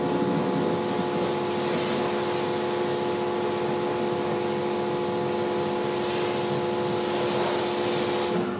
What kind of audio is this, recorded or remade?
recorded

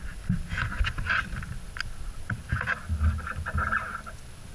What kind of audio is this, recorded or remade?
recorded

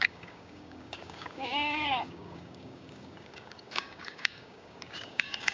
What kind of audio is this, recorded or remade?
remade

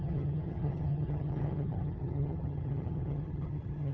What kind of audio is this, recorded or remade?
remade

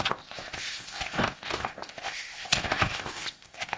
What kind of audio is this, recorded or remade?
remade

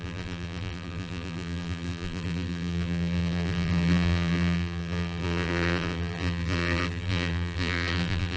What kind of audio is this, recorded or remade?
remade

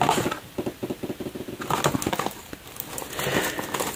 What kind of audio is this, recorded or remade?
recorded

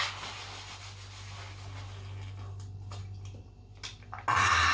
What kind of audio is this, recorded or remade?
recorded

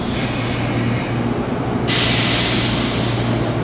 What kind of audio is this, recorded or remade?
recorded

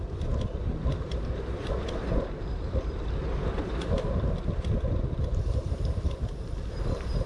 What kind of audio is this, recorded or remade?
remade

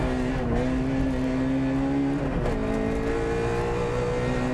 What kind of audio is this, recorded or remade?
recorded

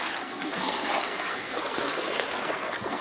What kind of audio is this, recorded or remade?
remade